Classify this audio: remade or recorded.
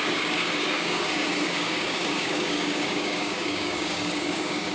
remade